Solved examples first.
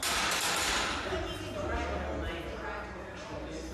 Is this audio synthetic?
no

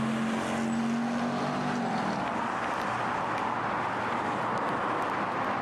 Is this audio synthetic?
no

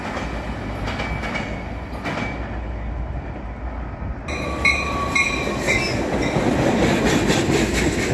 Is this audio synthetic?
no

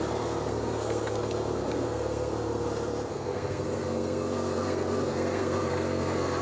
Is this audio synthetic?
yes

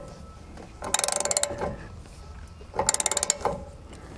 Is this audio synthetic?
no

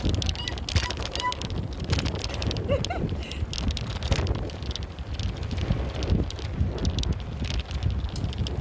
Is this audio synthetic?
no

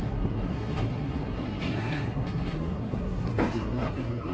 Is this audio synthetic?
yes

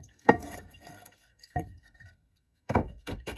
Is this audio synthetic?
yes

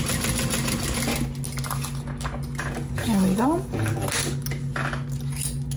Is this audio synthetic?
no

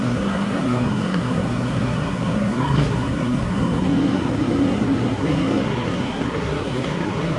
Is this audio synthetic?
yes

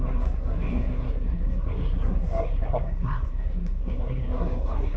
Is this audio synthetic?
yes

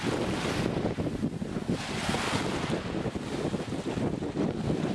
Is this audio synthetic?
no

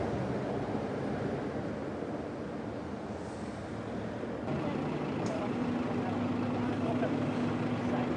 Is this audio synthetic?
no